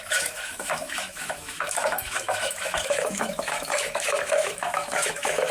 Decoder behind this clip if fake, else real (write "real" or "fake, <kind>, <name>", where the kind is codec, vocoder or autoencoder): fake, autoencoder, DAC-VAE